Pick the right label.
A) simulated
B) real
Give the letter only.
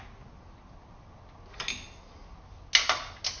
B